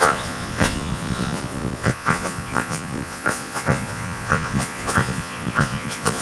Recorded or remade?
remade